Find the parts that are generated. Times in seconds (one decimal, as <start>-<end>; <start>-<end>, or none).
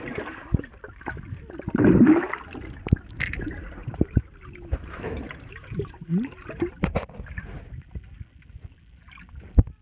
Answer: 3.8-6.7